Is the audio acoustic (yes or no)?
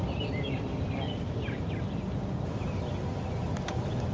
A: yes